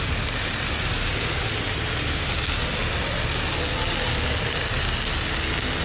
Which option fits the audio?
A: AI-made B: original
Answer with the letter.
B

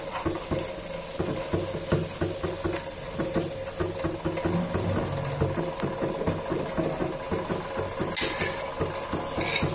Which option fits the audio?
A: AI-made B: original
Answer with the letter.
B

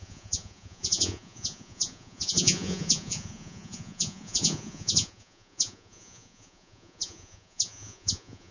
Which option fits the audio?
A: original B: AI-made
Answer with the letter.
B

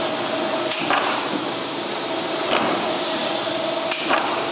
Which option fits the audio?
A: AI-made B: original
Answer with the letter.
A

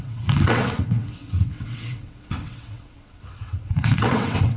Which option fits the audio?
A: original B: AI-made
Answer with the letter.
B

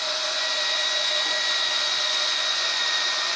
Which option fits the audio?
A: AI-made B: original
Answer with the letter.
A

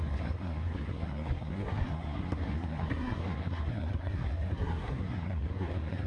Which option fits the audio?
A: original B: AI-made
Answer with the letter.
B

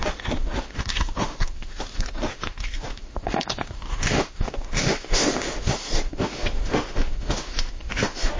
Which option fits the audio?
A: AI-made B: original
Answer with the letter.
A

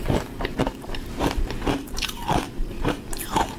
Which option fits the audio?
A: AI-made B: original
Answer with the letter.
A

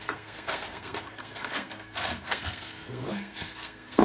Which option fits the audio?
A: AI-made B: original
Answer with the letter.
A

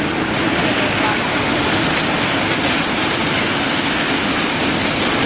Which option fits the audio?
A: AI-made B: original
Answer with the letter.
B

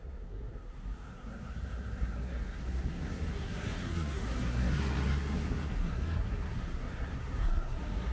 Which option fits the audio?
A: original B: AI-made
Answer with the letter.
B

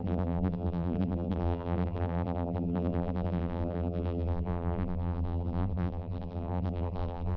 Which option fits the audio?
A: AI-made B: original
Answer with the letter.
A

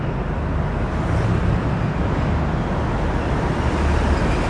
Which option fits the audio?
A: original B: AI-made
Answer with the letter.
A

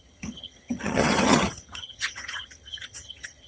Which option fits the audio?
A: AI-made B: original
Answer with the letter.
A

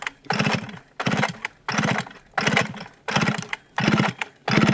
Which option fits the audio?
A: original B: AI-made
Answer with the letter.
A